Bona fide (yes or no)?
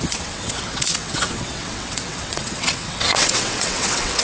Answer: no